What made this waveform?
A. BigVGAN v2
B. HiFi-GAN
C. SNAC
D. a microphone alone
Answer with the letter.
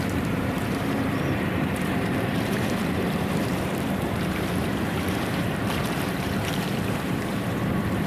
A